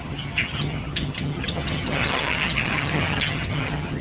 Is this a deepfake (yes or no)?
yes